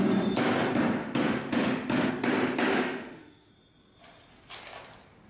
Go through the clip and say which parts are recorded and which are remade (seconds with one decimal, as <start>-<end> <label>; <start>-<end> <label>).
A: 0.0-1.0 recorded; 1.0-2.1 remade; 2.1-2.7 recorded; 2.7-3.5 remade; 3.5-5.3 recorded